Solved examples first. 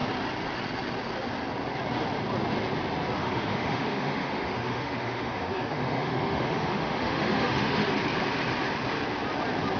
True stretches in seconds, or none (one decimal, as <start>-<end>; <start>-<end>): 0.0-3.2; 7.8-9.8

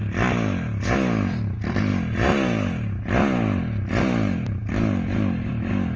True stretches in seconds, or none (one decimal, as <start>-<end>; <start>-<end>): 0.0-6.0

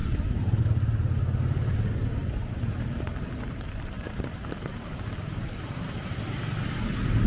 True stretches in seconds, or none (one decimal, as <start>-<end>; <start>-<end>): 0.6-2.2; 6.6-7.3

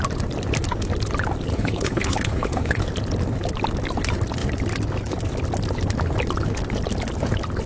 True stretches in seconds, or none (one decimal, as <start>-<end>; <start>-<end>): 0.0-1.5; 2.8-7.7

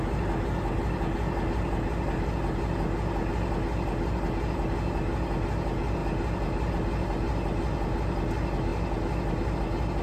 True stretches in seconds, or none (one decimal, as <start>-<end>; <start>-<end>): 0.0-10.0

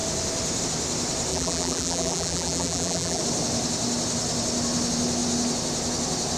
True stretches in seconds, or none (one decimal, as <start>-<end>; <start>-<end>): 0.0-1.3; 3.2-6.4

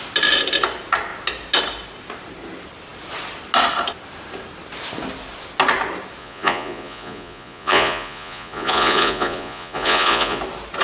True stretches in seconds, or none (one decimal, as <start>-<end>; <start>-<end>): 0.0-6.2; 10.4-10.8